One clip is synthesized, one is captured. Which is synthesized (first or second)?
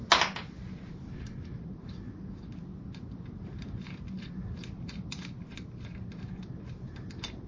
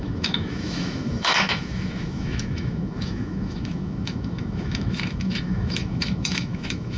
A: second